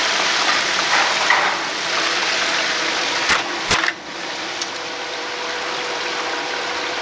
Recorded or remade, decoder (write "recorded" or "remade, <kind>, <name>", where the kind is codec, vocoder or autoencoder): remade, vocoder, BigVGAN v2